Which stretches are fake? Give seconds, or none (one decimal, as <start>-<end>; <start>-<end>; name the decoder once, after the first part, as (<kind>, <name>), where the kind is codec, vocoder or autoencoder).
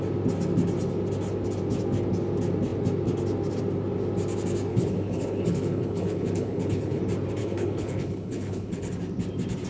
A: 4.7-7.0 (codec, HILCodec); 7.4-8.9